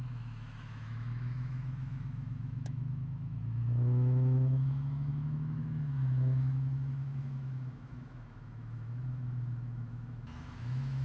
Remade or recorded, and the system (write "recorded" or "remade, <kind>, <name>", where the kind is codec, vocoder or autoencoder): remade, autoencoder, DAC-VAE